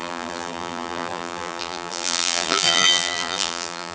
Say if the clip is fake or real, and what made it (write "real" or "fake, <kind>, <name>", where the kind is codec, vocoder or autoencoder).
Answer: fake, vocoder, BigVGAN v2